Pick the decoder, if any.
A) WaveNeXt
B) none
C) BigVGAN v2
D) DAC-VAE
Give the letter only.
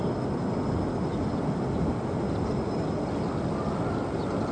B